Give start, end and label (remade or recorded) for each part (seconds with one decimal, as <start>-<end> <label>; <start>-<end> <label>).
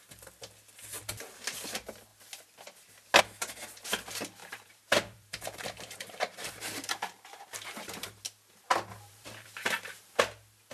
0.0-4.4 recorded; 4.4-8.2 remade; 8.2-8.9 recorded; 8.9-10.2 remade; 10.2-10.7 recorded